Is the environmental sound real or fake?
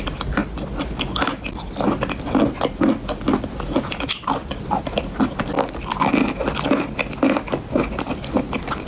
real